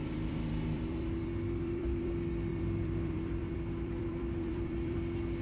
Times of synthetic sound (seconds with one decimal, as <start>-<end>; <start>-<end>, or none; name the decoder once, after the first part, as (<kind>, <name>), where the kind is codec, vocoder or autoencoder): 0.0-2.1 (vocoder, BigVGAN v2); 2.5-5.0